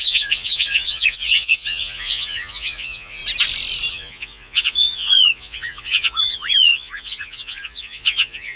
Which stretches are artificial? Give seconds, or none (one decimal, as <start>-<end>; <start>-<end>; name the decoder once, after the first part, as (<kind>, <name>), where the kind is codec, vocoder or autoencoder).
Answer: 0.0-3.2 (vocoder, Vocos); 3.9-8.6